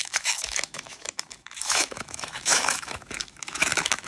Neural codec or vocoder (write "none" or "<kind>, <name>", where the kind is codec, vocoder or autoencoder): autoencoder, DAC-VAE